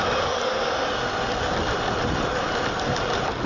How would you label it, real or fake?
real